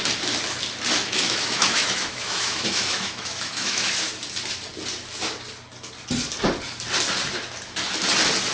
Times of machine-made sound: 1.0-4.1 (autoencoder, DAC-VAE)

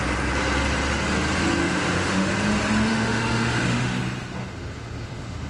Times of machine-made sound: 1.6-2.3 (autoencoder, DAC-VAE); 2.9-4.0; 4.4-5.5

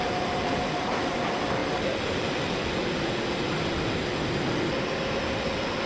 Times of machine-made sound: none

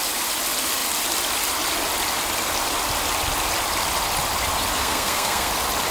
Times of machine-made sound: 4.8-5.5 (codec, SNAC)

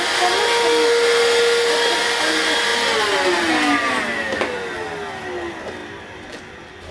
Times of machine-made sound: none